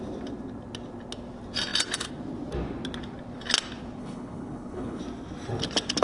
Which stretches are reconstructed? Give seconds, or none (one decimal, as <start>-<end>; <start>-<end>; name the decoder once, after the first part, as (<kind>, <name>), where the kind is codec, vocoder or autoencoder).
4.0-5.0 (codec, HILCodec)